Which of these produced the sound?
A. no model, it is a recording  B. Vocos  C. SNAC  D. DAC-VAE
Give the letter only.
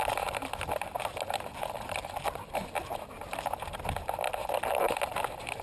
A